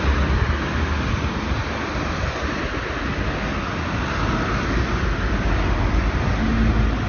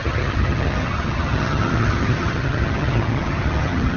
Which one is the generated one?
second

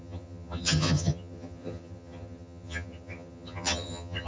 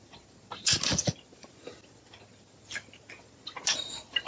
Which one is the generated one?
first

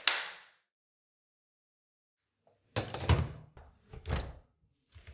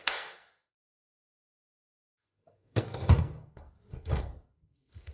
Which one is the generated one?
second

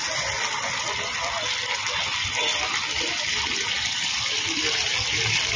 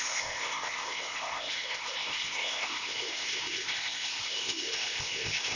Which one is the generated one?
second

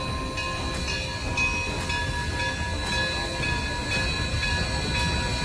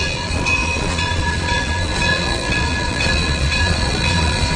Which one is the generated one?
second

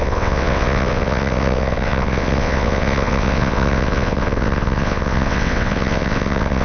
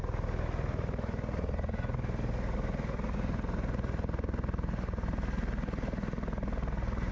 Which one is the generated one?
first